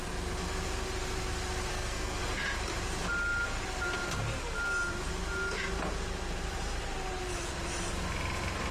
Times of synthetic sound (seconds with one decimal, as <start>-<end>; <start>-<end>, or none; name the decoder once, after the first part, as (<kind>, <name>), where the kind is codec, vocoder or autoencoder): 1.7-2.2 (codec, SNAC)